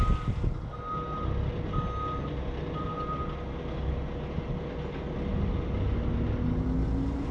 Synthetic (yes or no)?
no